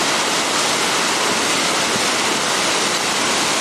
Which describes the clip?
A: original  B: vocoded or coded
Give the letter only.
A